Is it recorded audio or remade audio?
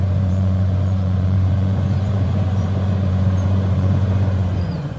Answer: remade